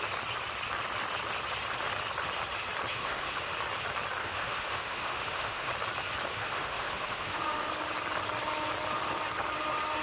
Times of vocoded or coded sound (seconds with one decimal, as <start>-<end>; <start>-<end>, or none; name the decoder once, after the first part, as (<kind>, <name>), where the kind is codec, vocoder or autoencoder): 2.9-3.5 (autoencoder, DAC-VAE); 4.2-5.7; 6.3-7.7